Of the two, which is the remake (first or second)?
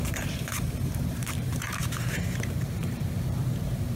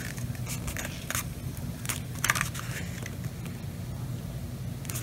first